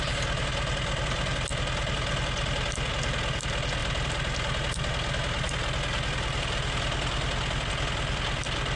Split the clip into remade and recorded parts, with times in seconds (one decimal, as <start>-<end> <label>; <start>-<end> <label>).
0.0-8.8 recorded